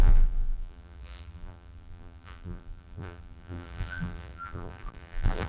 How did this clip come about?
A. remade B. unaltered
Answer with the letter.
A